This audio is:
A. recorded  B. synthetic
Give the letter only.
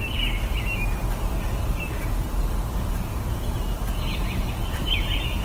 A